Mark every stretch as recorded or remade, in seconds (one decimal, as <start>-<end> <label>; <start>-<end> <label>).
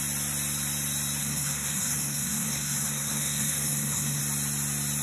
0.0-1.2 recorded; 1.2-4.2 remade; 4.2-5.0 recorded